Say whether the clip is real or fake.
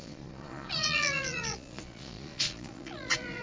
fake